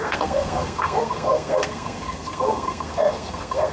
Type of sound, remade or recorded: remade